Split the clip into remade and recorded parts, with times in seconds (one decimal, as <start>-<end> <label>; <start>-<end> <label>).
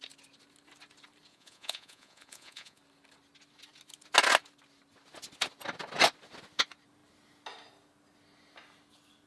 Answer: 0.0-1.3 recorded; 1.3-2.8 remade; 2.8-9.3 recorded